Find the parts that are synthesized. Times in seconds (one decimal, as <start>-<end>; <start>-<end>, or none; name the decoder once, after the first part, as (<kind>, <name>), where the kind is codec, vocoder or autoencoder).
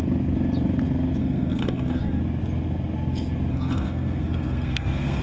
1.2-2.2 (codec, SNAC); 3.5-5.2